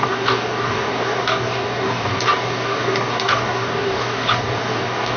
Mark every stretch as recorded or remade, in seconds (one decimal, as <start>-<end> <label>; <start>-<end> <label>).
0.0-5.2 remade